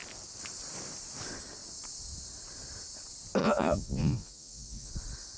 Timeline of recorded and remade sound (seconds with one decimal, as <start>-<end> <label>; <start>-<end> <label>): 0.0-3.4 recorded; 3.4-4.9 remade; 4.9-5.4 recorded